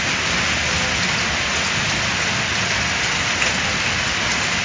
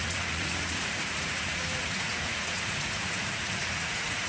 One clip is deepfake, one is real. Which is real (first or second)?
first